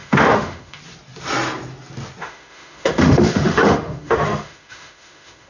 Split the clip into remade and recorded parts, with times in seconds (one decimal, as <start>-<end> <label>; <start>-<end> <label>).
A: 0.0-0.8 remade; 0.8-2.2 recorded; 2.2-5.5 remade